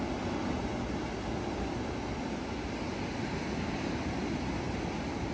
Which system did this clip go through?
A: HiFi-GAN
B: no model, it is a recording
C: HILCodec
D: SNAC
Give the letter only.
B